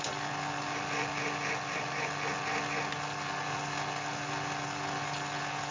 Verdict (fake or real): real